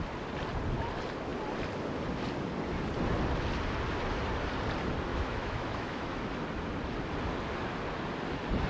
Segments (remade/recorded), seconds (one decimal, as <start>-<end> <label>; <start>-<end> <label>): 0.0-5.1 recorded; 5.1-6.3 remade; 6.3-8.7 recorded

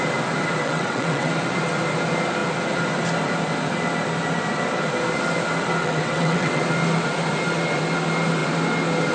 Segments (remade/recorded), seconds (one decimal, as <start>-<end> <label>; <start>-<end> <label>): 0.0-0.6 recorded; 0.6-1.3 remade; 1.3-5.8 recorded; 5.8-6.6 remade; 6.6-9.1 recorded